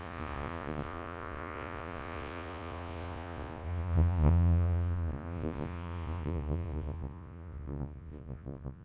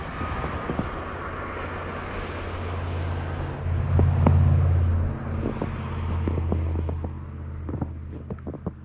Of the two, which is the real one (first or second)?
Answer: second